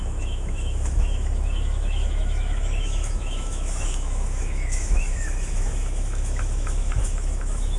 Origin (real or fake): fake